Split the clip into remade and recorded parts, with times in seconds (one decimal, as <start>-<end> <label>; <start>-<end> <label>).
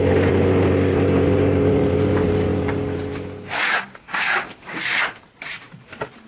0.0-2.5 remade; 2.5-4.0 recorded; 4.0-6.3 remade